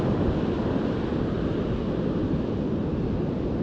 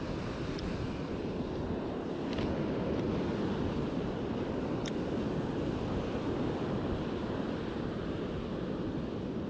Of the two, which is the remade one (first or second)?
second